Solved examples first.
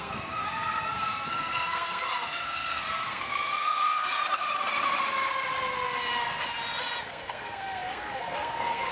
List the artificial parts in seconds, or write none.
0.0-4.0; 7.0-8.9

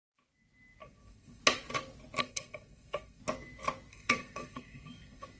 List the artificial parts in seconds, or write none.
0.8-1.4; 2.2-3.2; 3.9-5.4

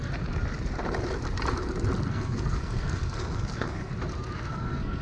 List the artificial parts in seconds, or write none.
2.1-3.9; 4.5-5.0

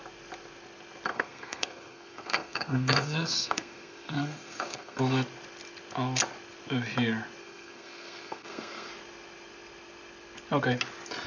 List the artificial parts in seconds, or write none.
1.1-5.0; 7.4-8.9

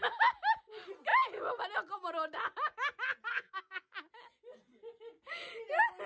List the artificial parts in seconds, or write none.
3.3-3.9

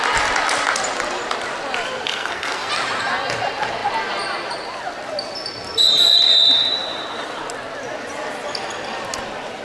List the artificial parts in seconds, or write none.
2.1-2.7

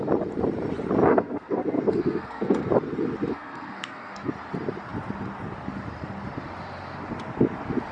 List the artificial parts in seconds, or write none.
1.1-2.7; 3.3-4.3